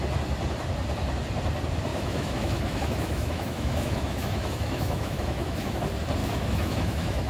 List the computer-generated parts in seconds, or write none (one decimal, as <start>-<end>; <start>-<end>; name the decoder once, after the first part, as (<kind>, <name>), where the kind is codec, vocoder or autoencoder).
1.9-5.8 (autoencoder, DAC-VAE); 6.2-7.3